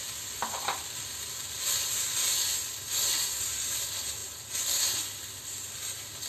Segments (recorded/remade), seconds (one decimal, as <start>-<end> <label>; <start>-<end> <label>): 0.0-6.3 recorded